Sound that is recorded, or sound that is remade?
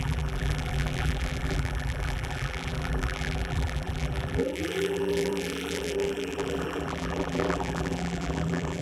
remade